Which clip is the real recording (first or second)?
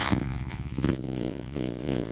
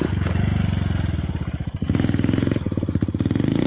second